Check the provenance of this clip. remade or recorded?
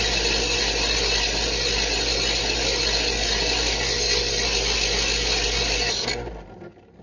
recorded